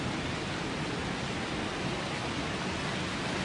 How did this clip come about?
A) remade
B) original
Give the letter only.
B